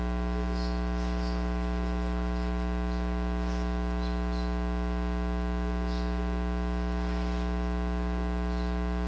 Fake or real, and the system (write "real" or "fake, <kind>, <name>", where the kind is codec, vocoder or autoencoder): real